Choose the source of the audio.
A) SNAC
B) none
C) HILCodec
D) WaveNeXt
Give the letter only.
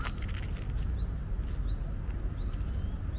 B